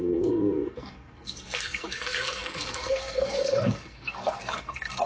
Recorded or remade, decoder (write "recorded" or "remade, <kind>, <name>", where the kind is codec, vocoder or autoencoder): remade, codec, SNAC